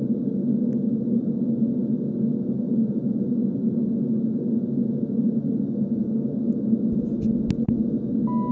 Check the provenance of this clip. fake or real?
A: real